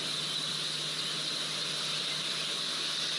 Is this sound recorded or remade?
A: recorded